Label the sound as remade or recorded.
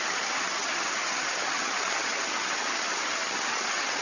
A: remade